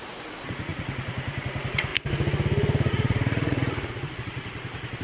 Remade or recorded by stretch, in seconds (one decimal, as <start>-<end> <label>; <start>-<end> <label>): 0.0-1.9 remade; 1.9-2.9 recorded; 2.9-5.0 remade